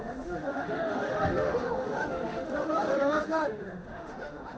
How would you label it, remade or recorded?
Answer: remade